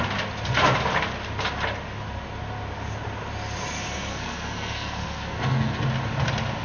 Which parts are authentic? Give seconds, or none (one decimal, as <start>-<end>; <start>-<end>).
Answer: 0.0-4.1; 5.8-6.6